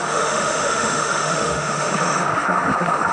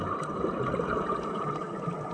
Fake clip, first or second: first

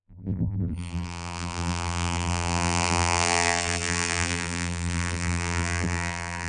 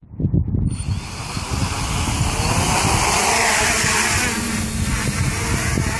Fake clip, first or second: first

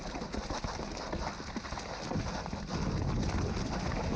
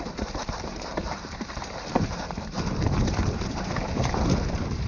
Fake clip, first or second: second